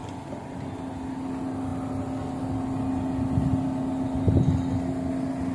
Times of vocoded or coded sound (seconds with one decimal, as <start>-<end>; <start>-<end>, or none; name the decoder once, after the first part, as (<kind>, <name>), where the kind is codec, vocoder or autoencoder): none